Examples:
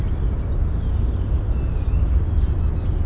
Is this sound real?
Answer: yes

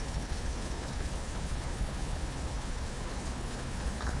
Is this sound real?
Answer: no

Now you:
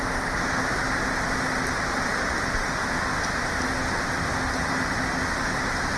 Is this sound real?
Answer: yes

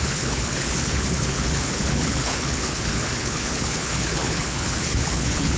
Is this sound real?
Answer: no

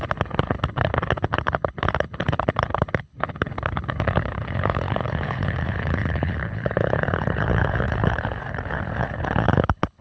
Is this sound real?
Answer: no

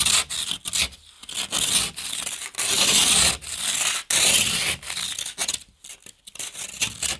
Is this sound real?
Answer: yes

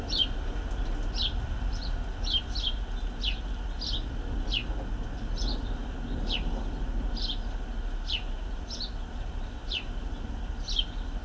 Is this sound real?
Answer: yes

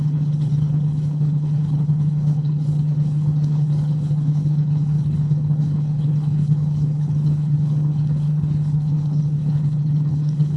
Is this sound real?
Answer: no